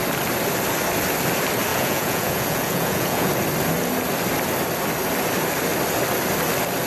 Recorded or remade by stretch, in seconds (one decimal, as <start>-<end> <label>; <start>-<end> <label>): 0.0-1.7 recorded; 1.7-3.3 remade; 3.3-6.9 recorded